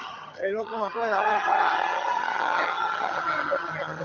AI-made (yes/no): yes